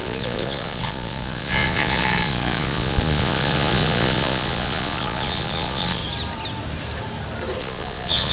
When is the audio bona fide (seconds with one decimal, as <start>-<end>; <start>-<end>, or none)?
6.0-7.6

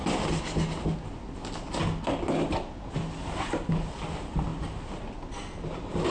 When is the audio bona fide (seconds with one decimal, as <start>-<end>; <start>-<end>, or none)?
0.0-6.1

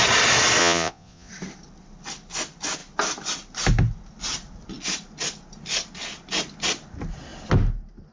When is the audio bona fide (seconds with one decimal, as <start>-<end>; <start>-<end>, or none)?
0.0-0.6; 1.3-8.1